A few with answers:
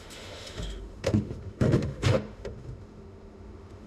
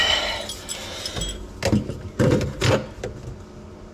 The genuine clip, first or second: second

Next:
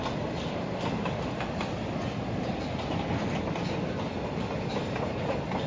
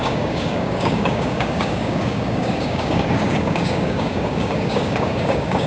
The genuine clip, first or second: first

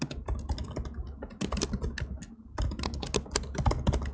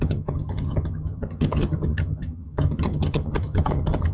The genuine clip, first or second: first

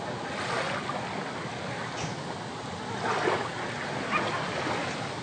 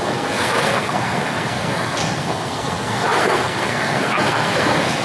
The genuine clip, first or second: first